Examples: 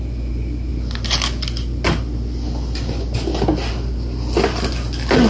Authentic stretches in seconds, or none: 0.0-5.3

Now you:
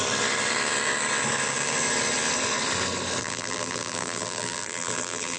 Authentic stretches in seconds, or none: 0.0-3.2

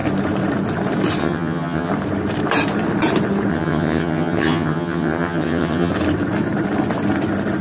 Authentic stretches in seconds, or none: 0.0-1.2; 1.9-3.5; 5.9-7.6

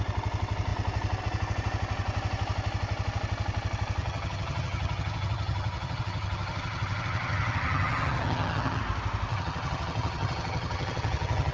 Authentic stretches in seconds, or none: 0.0-4.0; 8.8-9.3

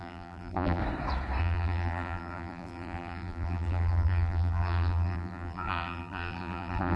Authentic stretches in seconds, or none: 0.8-1.4

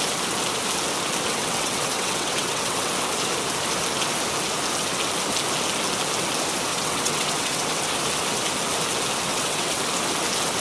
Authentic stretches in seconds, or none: 0.0-1.3; 2.9-6.7; 7.8-9.3; 9.8-10.6